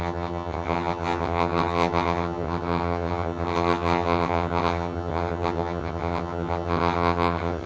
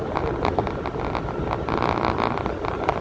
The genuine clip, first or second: second